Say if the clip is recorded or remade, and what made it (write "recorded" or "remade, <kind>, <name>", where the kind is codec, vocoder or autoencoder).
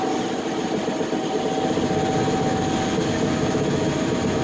recorded